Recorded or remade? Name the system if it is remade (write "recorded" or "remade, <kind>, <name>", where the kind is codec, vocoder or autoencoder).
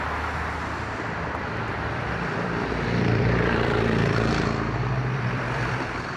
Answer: remade, vocoder, BigVGAN v2